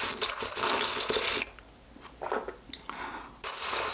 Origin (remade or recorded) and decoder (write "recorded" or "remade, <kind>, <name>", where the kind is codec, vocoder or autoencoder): recorded